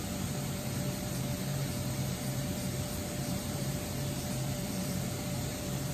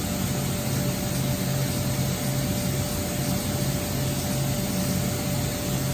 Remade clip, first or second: first